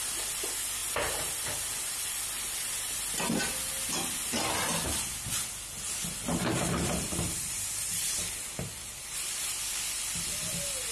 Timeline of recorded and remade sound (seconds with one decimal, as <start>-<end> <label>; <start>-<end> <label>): 0.0-10.9 recorded